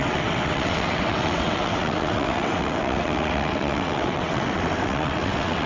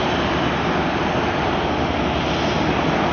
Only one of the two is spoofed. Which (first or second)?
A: first